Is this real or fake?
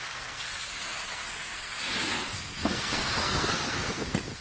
fake